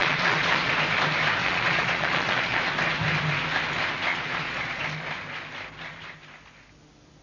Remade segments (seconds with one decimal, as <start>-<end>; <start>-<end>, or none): 0.0-0.7; 1.4-2.7; 4.1-4.8

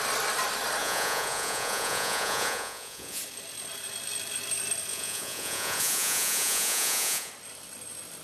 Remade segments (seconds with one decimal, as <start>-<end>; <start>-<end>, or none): 0.8-3.2; 4.9-7.3

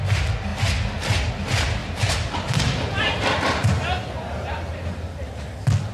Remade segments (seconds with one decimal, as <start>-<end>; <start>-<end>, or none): 1.8-5.3

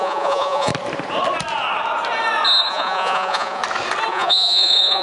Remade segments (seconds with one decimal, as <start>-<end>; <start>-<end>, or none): 0.0-0.7; 2.7-3.6; 4.1-5.0